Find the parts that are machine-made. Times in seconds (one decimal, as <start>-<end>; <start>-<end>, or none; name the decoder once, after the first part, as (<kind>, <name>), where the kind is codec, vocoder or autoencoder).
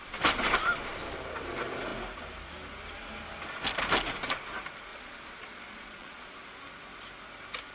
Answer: 4.9-6.4 (vocoder, Vocos)